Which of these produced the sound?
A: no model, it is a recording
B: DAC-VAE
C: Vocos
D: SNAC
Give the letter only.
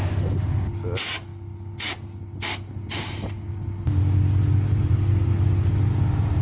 A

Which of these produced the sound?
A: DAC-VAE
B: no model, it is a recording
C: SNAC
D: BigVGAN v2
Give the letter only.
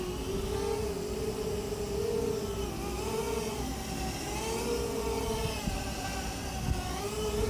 B